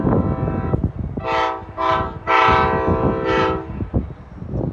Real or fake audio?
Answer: real